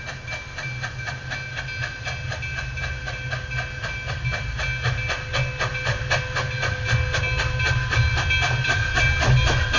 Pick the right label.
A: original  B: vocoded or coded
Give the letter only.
A